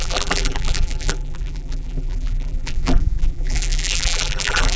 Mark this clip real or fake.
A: fake